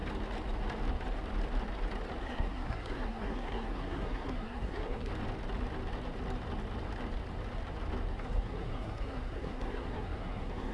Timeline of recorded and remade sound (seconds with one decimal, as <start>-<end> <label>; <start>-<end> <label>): 0.0-2.2 recorded; 2.2-5.1 remade; 5.1-8.2 recorded; 8.2-10.7 remade